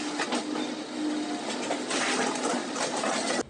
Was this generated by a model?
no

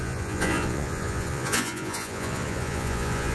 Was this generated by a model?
yes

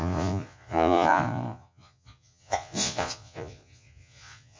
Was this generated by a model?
yes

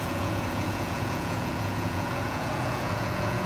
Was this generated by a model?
yes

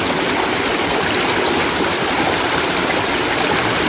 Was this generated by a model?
no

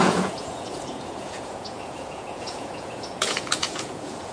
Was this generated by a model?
yes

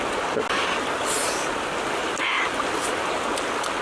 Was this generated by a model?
no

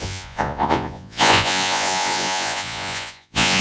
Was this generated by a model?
yes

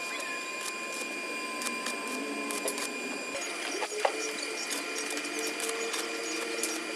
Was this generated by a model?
no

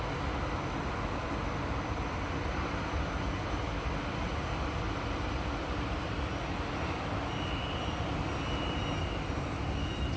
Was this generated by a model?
no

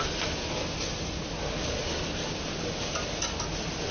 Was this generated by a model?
no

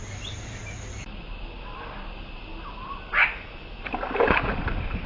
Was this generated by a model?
no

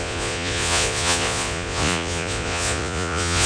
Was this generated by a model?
yes